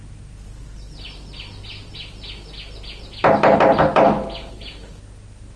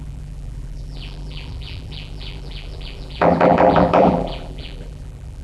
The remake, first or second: second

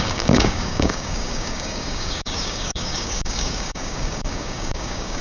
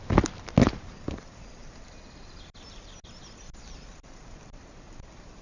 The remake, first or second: first